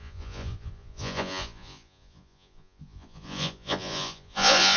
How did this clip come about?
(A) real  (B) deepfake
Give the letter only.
B